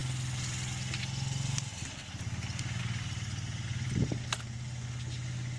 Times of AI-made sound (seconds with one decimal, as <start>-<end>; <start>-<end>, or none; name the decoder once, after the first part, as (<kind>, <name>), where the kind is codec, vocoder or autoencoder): none